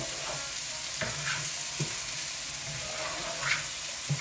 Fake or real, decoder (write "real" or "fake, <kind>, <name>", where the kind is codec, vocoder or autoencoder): real